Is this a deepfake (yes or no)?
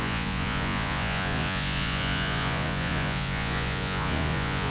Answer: yes